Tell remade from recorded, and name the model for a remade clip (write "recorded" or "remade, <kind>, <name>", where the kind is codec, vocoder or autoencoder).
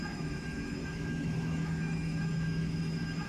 remade, autoencoder, DAC-VAE